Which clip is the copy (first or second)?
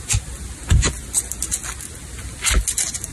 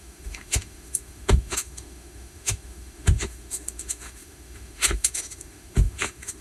second